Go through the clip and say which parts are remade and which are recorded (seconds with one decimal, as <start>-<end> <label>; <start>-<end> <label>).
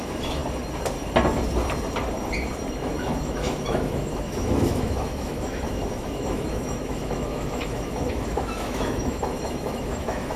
0.0-0.4 remade; 0.4-2.7 recorded; 2.7-10.4 remade